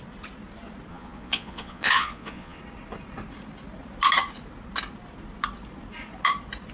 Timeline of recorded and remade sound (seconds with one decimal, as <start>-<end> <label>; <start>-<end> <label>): 0.0-0.9 recorded; 0.9-2.6 remade; 2.6-6.7 recorded